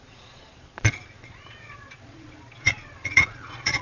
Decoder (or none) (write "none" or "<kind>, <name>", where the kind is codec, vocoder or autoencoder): vocoder, Vocos